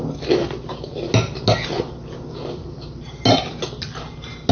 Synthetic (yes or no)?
no